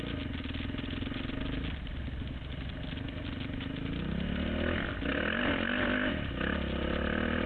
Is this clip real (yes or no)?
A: yes